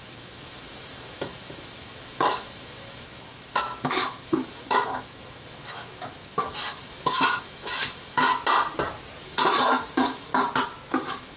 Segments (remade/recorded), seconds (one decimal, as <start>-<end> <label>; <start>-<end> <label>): 0.0-8.3 remade; 8.3-9.2 recorded; 9.2-10.3 remade; 10.3-10.9 recorded; 10.9-11.4 remade